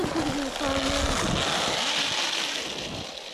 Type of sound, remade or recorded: recorded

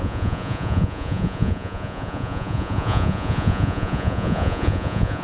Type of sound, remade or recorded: remade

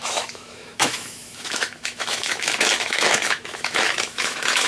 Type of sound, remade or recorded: remade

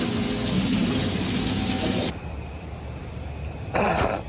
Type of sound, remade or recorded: recorded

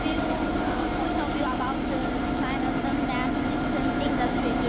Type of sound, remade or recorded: recorded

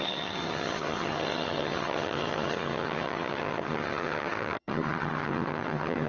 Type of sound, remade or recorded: remade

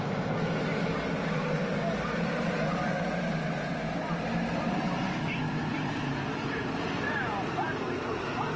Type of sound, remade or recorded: remade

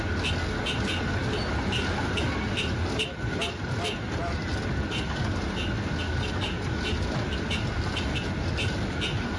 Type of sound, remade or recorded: recorded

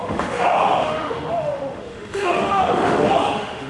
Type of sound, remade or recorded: remade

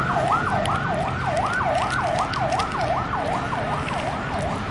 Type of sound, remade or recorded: recorded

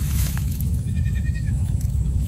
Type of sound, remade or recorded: remade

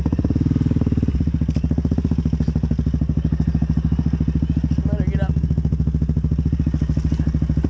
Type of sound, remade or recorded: recorded